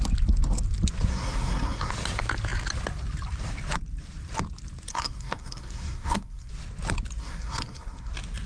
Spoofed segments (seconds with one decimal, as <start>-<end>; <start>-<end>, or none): 1.1-1.9; 4.9-6.5; 7.2-8.1